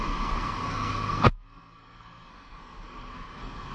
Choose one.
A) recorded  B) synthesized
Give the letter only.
B